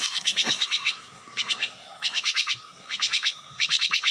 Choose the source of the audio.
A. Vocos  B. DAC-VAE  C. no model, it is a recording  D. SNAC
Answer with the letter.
D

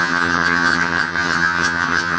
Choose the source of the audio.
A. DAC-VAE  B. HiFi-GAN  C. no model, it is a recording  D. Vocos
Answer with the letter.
B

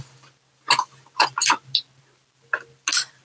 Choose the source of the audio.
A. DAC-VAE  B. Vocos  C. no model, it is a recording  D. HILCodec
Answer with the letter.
C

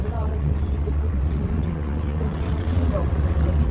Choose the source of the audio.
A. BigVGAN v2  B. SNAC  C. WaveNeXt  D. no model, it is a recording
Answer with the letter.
C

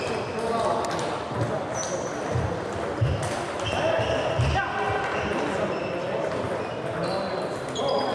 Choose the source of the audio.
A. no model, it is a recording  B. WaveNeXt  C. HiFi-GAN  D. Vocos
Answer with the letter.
A